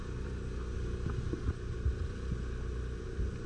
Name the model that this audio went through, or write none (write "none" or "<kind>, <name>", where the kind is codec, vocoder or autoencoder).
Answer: none